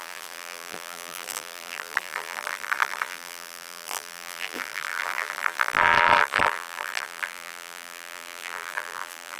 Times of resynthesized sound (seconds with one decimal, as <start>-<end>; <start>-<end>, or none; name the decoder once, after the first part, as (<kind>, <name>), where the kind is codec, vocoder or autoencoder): 0.0-9.4 (vocoder, BigVGAN v2)